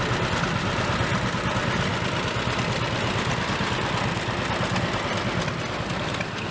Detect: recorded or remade recorded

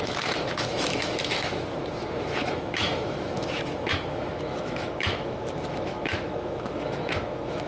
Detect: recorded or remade remade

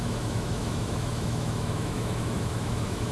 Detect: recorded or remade remade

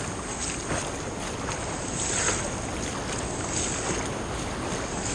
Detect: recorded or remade recorded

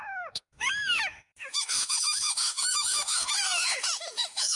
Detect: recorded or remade remade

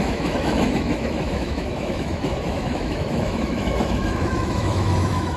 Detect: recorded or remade remade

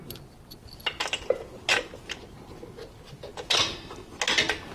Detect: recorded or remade recorded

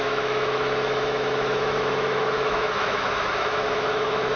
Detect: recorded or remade remade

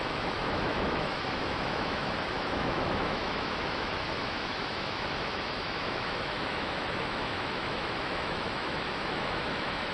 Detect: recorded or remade remade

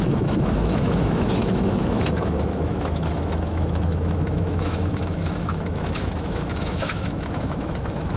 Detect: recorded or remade remade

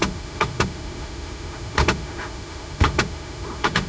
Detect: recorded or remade remade